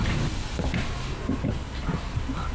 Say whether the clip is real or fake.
real